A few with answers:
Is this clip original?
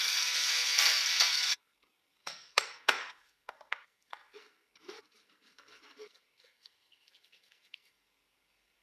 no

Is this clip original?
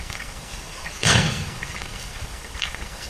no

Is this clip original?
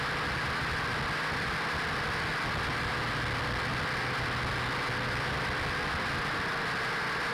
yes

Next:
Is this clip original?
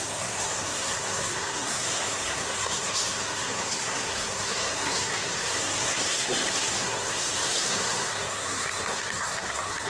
no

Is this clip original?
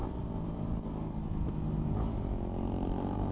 yes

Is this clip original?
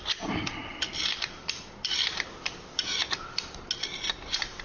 no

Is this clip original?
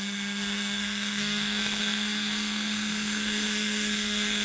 no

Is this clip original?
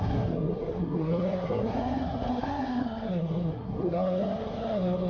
no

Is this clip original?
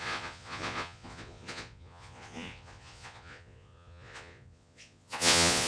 no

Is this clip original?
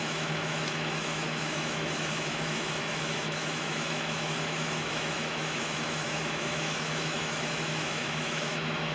no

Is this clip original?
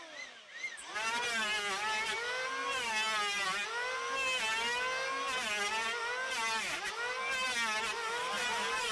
yes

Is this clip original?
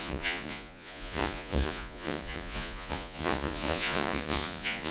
no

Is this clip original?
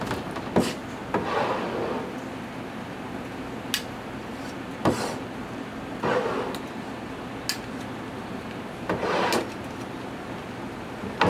yes